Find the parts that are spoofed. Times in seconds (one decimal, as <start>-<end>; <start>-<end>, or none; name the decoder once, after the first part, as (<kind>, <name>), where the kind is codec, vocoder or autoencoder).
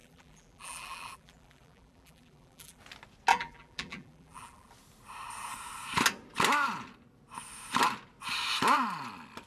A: 0.0-2.8 (vocoder, BigVGAN v2); 3.3-4.7